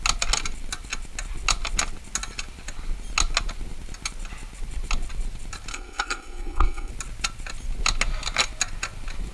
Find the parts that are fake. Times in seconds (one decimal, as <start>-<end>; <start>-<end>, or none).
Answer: 5.7-6.9